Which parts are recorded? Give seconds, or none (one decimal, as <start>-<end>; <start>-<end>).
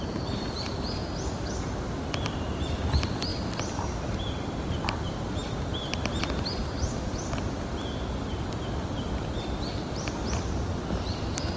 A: none